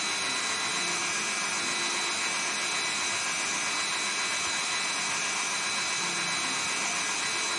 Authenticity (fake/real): real